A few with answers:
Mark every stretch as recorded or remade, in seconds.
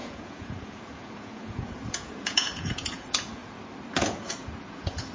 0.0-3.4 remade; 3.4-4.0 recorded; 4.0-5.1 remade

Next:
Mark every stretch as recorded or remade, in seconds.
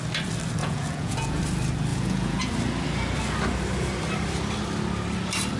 0.0-0.6 recorded; 0.6-1.4 remade; 1.4-1.9 recorded; 1.9-2.5 remade; 2.5-5.6 recorded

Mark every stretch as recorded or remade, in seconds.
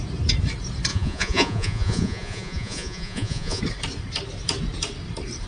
0.0-0.9 recorded; 0.9-3.6 remade; 3.6-5.5 recorded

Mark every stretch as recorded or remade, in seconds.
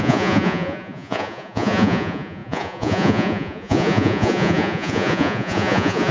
0.0-6.1 remade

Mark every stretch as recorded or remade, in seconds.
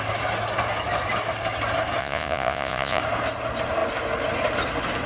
0.0-2.0 recorded; 2.0-3.0 remade; 3.0-5.1 recorded